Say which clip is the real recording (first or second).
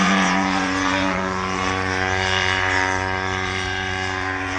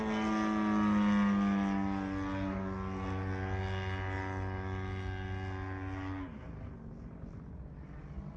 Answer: second